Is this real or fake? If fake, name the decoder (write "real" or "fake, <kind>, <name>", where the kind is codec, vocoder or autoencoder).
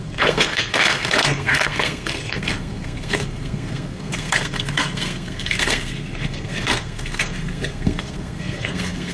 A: fake, codec, SNAC